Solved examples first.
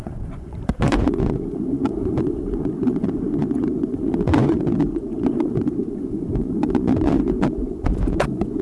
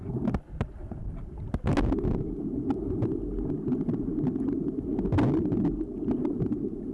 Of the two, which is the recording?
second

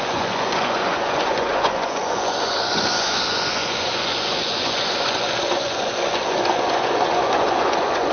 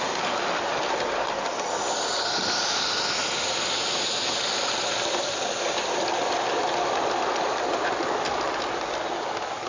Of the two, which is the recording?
second